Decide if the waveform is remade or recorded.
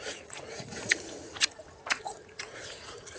remade